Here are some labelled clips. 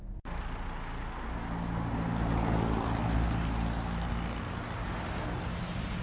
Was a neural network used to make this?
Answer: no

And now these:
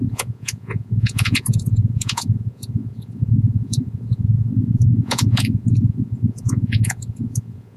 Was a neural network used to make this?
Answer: yes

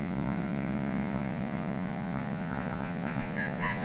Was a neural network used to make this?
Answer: yes